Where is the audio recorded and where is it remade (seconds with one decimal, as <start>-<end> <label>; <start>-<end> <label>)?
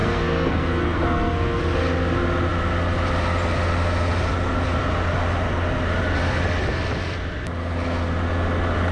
0.0-1.6 remade; 1.6-8.9 recorded